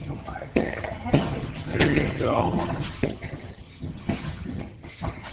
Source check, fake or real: fake